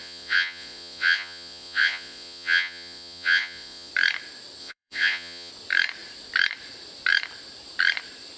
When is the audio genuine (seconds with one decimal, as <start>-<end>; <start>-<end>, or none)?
3.9-4.6; 5.5-8.4